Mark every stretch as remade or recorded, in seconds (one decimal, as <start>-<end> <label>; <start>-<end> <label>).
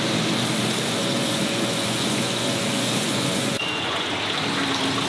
0.0-1.0 recorded; 1.0-4.1 remade; 4.1-5.1 recorded